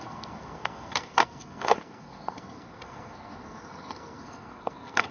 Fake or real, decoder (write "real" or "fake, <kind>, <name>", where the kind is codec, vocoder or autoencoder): fake, codec, SNAC